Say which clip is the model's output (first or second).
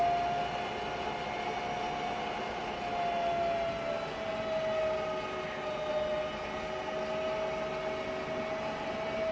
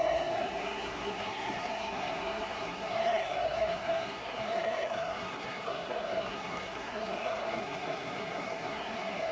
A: second